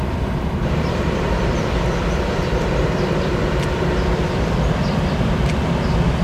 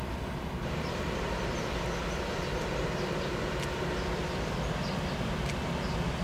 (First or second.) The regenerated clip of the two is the first